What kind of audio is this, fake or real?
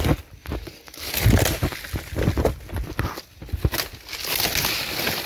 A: real